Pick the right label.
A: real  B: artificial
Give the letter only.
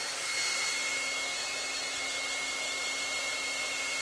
A